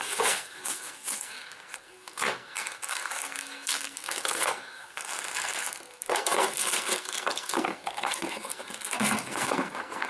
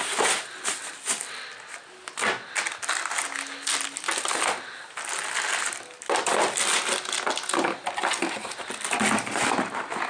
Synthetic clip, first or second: first